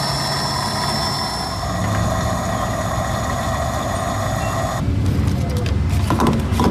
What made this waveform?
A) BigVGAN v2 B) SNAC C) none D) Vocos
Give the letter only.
C